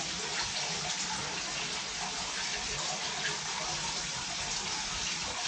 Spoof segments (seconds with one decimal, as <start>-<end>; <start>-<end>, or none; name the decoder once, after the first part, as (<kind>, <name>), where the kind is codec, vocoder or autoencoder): none